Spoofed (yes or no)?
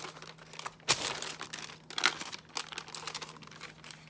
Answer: no